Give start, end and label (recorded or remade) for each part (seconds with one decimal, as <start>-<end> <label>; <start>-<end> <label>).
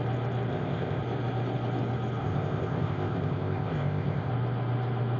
0.0-0.5 recorded; 0.5-1.0 remade; 1.0-2.2 recorded; 2.2-4.3 remade; 4.3-5.2 recorded